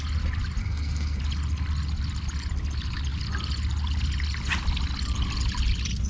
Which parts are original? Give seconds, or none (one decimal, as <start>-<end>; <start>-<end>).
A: 0.0-0.6; 1.2-6.1